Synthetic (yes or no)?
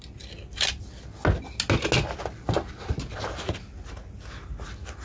no